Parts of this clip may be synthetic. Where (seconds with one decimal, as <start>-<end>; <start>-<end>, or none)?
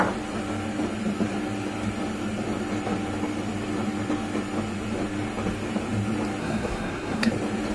6.4-7.3